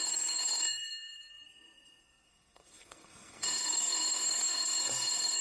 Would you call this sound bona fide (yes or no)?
no